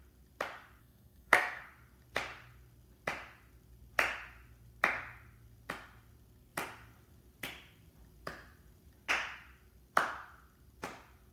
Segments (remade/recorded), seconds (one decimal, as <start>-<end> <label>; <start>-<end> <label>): 0.0-0.8 recorded; 0.8-1.6 remade; 1.6-11.3 recorded